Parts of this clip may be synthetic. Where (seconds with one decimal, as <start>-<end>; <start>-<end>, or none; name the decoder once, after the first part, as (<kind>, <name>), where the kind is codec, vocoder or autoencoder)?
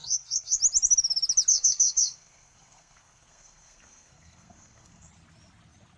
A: 0.0-0.6 (codec, SNAC); 1.5-5.1